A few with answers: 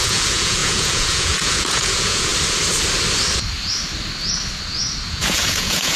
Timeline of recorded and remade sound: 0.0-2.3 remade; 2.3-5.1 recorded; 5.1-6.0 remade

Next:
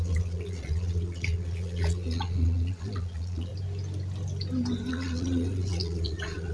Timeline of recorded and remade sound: 0.0-3.5 remade; 3.5-4.9 recorded; 4.9-6.5 remade

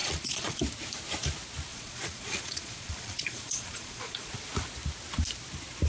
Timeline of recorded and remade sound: 0.0-0.6 remade; 0.6-1.7 recorded; 1.7-4.3 remade; 4.3-5.9 recorded

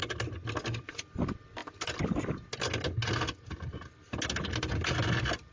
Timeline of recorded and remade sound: 0.0-5.5 recorded

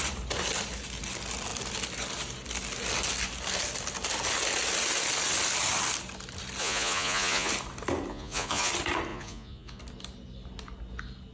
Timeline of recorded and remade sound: 0.0-6.6 recorded; 6.6-7.5 remade; 7.5-8.1 recorded; 8.1-8.7 remade; 8.7-9.1 recorded; 9.1-9.8 remade; 9.8-11.3 recorded

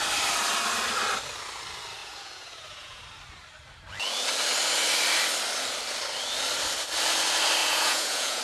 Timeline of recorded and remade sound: 0.0-2.0 recorded; 2.0-3.0 remade; 3.0-7.6 recorded; 7.6-8.4 remade

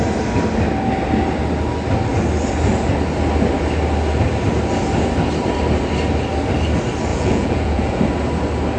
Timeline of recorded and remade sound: 0.0-7.1 recorded; 7.1-8.0 remade; 8.0-8.8 recorded